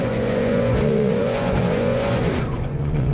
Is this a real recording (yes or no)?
no